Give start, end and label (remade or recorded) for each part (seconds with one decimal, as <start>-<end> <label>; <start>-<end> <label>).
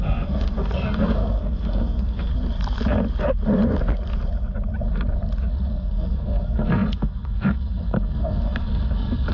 0.0-2.3 remade; 2.3-5.7 recorded; 5.7-9.3 remade